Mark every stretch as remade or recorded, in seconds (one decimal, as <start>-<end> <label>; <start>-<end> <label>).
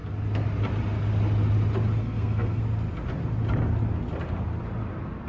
0.0-2.0 recorded; 2.0-2.6 remade; 2.6-5.3 recorded